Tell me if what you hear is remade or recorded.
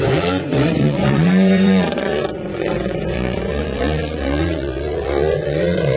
remade